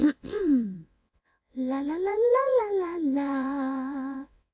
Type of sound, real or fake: fake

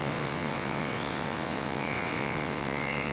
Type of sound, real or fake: fake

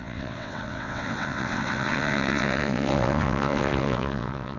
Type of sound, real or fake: fake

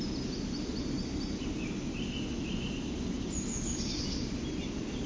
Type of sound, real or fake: real